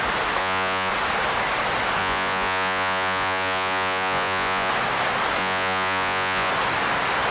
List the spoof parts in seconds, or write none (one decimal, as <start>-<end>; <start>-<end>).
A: 0.4-0.9; 2.0-4.7; 5.4-6.5